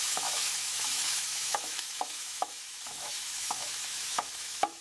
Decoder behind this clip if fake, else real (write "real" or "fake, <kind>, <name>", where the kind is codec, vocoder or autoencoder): fake, autoencoder, DAC-VAE